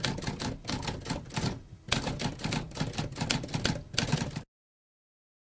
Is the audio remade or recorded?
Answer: recorded